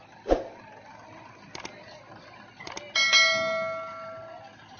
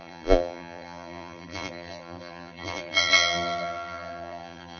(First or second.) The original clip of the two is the first